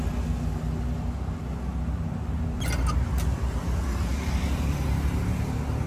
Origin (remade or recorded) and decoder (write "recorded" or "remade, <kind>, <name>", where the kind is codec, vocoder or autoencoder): recorded